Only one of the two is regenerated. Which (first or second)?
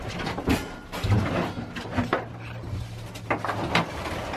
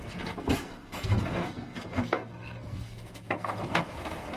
second